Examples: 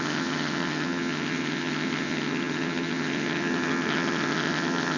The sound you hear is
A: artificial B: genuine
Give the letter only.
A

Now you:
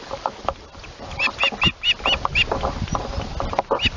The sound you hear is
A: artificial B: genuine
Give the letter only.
B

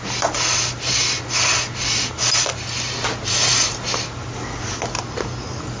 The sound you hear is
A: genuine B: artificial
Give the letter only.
A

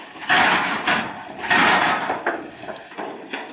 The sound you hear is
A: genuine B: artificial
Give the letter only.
A